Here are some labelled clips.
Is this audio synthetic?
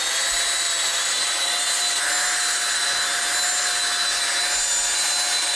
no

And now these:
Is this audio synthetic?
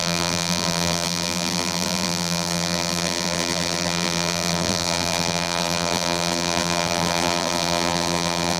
yes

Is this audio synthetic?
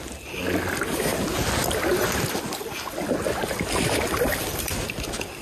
no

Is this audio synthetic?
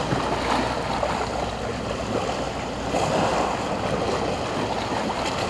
no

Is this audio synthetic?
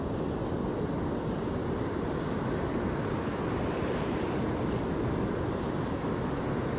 no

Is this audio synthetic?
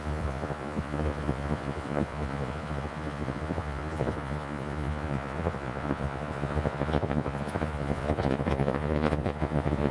yes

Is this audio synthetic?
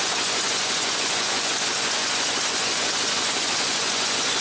yes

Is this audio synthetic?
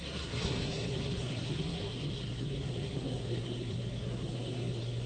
yes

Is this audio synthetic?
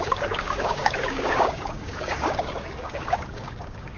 yes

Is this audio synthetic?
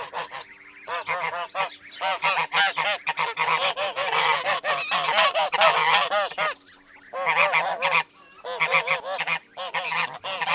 no